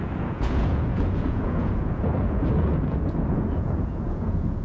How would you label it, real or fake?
fake